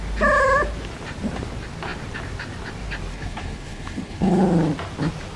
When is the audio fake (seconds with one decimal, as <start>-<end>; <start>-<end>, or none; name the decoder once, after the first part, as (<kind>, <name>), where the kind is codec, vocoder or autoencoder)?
3.1-4.4 (codec, HILCodec)

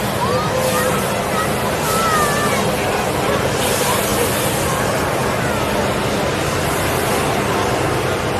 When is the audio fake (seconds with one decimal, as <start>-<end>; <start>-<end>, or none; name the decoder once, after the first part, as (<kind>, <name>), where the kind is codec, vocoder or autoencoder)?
4.1-4.6 (vocoder, BigVGAN v2)

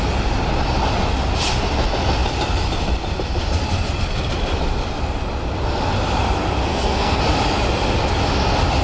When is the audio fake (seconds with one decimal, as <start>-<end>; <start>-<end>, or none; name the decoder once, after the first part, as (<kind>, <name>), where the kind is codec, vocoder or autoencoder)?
6.7-7.2 (codec, SNAC)

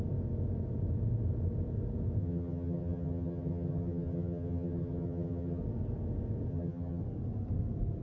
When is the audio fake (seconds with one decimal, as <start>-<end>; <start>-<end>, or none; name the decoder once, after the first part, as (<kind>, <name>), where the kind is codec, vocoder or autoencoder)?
2.2-5.6 (vocoder, HiFi-GAN); 6.5-7.0

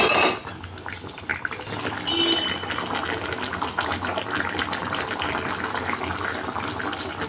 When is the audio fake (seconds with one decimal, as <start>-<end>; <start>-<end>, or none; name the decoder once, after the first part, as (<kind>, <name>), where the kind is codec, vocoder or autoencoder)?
none

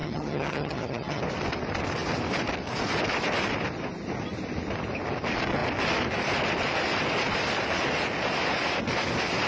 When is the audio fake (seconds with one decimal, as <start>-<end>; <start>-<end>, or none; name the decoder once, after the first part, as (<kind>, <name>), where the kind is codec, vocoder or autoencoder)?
0.0-1.2 (vocoder, HiFi-GAN)